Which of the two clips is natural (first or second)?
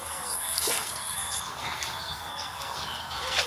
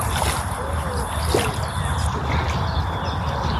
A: second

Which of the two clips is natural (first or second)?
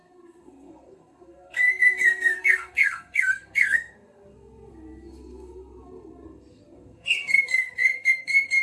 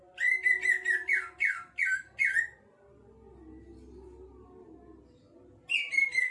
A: second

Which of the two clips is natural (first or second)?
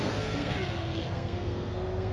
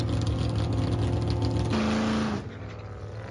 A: second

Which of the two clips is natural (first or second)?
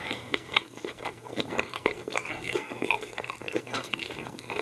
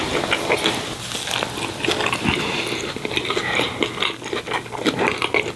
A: second